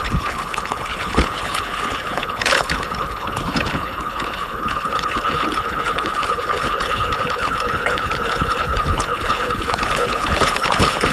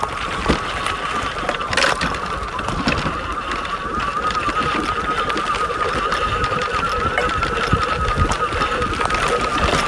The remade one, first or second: first